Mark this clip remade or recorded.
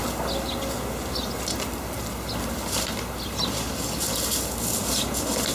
recorded